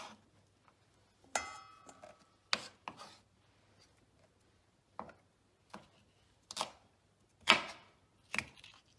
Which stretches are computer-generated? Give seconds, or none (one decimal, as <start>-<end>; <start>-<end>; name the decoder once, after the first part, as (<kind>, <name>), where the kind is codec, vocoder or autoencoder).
none